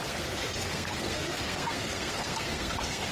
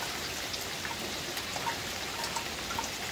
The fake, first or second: first